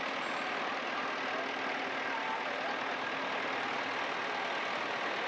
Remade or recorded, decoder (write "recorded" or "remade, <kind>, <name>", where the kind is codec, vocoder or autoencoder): recorded